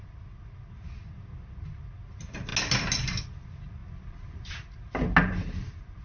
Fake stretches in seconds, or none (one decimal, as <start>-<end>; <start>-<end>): none